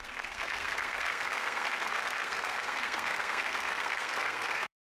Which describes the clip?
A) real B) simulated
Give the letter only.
B